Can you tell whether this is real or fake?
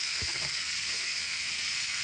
fake